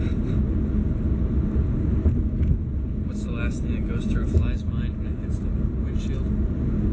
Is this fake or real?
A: real